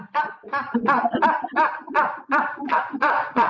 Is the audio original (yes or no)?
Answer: no